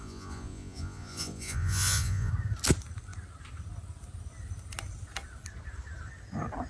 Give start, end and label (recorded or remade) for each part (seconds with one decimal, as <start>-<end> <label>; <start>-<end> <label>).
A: 0.0-2.3 remade; 2.3-6.7 recorded